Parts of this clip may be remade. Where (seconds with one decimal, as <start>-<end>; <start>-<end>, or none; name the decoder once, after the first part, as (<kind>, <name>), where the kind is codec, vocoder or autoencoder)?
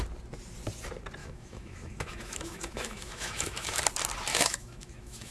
1.2-3.8 (autoencoder, DAC-VAE); 4.3-5.3